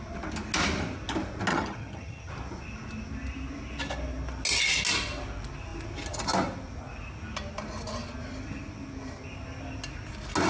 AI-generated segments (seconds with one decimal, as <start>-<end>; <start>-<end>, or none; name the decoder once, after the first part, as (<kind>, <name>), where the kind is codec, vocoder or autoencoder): 1.5-2.3 (vocoder, HiFi-GAN)